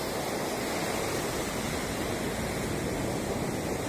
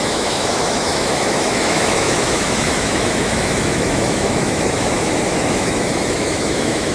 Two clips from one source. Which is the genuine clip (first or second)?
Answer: first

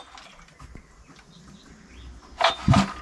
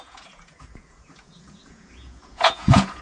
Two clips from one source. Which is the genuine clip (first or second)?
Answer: first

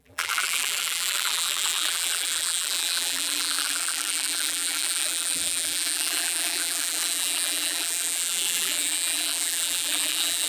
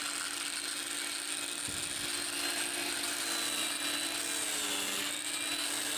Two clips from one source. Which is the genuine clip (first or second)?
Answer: second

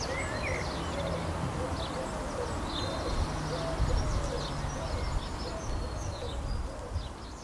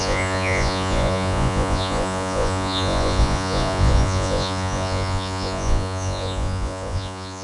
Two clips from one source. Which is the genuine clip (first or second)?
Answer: first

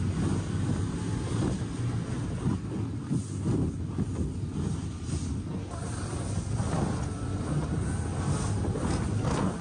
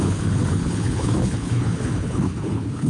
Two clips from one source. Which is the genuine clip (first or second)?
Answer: first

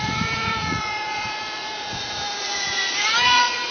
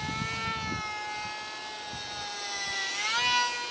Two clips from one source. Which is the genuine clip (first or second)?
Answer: second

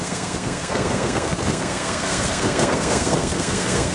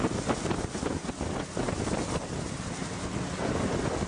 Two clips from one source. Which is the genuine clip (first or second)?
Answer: second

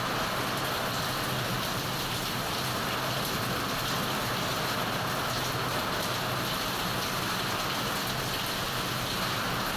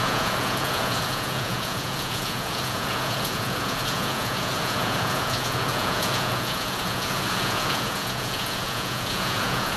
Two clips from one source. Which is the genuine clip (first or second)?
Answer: first